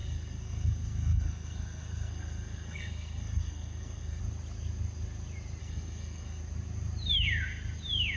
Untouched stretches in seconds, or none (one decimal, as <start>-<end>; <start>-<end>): 4.2-5.6; 6.4-8.2